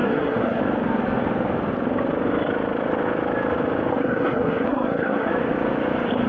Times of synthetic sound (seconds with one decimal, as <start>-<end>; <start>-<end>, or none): 0.0-0.6; 3.9-5.3